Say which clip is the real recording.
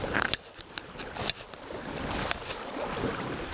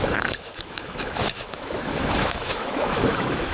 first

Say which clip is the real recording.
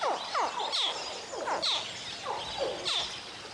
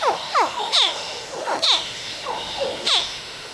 first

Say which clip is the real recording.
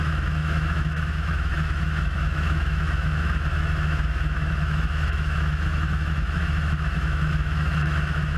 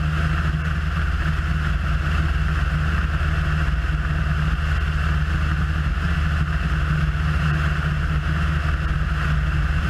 second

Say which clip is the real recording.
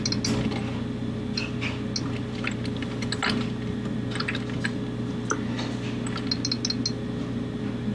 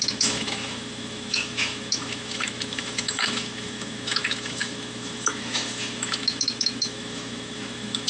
first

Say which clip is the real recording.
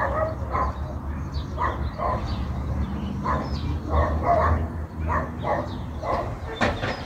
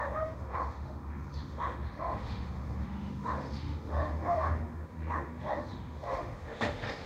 first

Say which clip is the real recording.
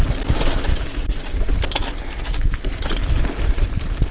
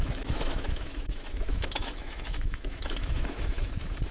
first